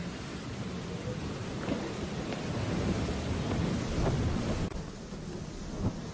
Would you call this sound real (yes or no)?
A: yes